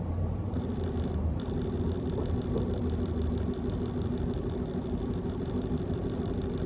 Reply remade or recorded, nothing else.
recorded